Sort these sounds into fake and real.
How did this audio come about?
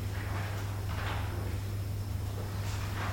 real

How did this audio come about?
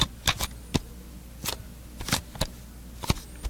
real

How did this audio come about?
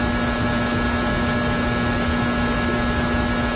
real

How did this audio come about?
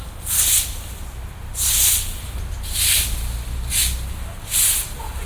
real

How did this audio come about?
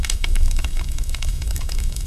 fake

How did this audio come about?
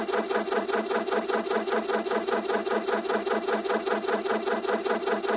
real